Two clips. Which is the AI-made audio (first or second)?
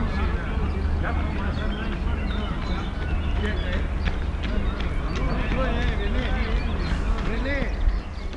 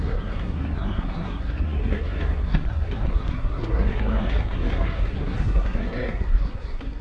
second